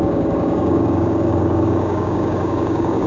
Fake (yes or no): yes